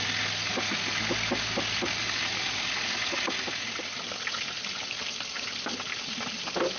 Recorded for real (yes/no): yes